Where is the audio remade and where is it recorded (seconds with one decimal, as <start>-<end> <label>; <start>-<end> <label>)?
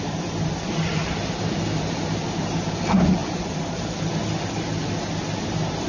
0.0-5.9 recorded